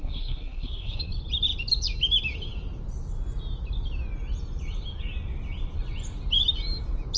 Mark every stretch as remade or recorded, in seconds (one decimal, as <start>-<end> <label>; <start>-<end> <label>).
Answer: 0.0-1.1 remade; 1.1-7.2 recorded

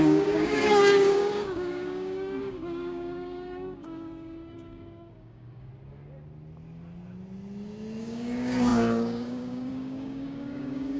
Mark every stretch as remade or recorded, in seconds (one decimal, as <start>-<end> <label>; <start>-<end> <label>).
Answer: 0.0-5.7 remade; 5.7-8.0 recorded; 8.0-11.0 remade